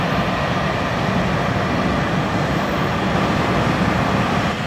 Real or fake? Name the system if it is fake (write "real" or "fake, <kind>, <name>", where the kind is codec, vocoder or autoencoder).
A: real